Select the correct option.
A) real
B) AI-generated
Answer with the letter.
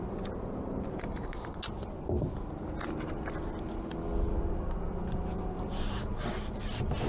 A